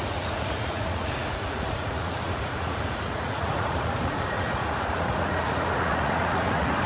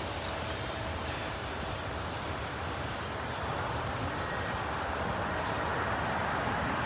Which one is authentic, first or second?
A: second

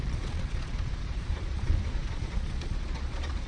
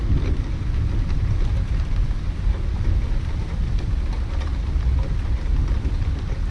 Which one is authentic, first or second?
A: second